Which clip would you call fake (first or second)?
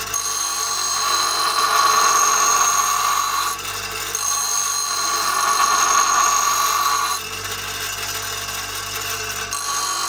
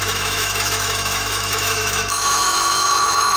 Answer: second